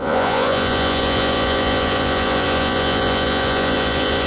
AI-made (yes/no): yes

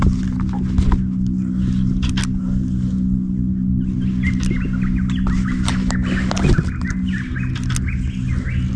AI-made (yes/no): no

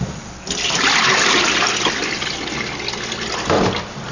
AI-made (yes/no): no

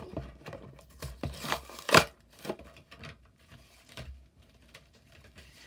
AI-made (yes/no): yes